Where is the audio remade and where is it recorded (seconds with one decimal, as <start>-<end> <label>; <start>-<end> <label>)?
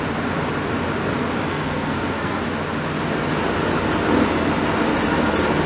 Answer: 0.0-1.5 recorded; 1.5-2.4 remade; 2.4-5.7 recorded